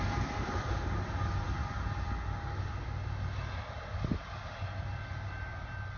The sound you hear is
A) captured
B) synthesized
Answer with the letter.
A